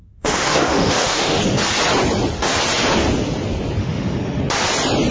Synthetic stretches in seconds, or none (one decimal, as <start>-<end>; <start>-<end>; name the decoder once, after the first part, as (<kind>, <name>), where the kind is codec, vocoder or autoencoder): 0.0-1.4 (autoencoder, DAC-VAE); 3.8-4.4